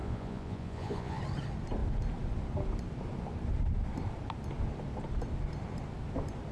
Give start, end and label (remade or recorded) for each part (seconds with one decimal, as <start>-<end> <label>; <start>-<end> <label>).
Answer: 0.0-1.2 remade; 1.2-6.5 recorded